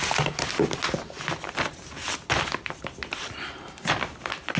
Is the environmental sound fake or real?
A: real